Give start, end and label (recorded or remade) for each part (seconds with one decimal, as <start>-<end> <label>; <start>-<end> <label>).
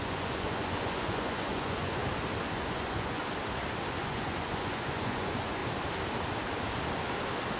0.0-2.0 remade; 2.0-2.5 recorded; 2.5-3.2 remade; 3.2-4.0 recorded; 4.0-5.6 remade; 5.6-7.6 recorded